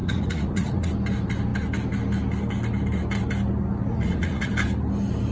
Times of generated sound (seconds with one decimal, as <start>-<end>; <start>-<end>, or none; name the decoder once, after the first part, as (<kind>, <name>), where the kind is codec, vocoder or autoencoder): 0.0-0.9 (vocoder, Vocos); 3.9-4.5